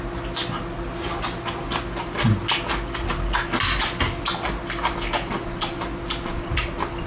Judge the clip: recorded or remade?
recorded